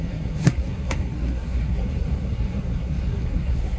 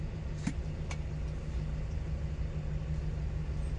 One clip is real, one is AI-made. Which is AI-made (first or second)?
first